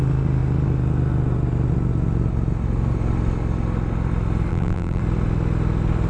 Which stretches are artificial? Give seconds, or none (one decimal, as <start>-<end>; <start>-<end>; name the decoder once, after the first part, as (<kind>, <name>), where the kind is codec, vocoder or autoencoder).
4.5-5.0 (vocoder, BigVGAN v2)